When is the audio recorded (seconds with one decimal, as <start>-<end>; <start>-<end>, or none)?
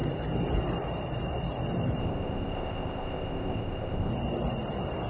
0.0-2.0; 4.1-5.1